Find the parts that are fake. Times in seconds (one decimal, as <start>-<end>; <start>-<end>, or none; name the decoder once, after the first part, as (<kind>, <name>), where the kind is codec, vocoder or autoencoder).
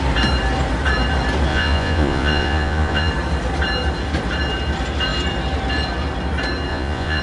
1.5-3.1 (vocoder, Vocos); 6.7-7.2